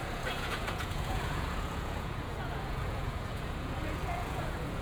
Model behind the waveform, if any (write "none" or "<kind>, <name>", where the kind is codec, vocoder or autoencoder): vocoder, Vocos